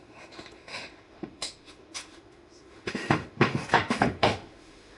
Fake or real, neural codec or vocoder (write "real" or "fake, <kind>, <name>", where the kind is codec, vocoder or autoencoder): fake, autoencoder, DAC-VAE